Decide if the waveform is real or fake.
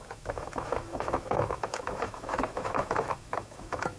fake